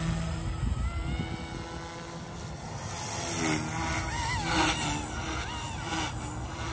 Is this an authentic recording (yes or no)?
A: yes